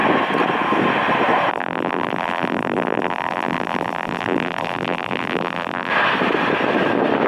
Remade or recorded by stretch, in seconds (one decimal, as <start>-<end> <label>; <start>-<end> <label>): 0.0-1.5 recorded; 1.5-5.9 remade; 5.9-7.3 recorded